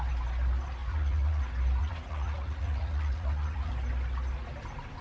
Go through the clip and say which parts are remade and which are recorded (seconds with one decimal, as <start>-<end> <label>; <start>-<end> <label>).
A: 0.0-0.8 recorded; 0.8-1.4 remade; 1.4-1.8 recorded; 1.8-3.7 remade; 3.7-5.0 recorded